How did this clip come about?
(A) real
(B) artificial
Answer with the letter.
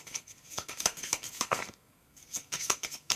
B